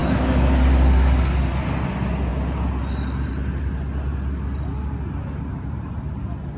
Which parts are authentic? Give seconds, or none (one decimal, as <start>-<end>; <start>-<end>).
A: 0.0-6.6